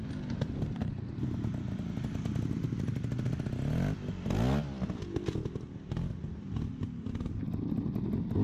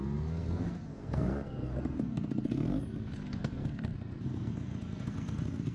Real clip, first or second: first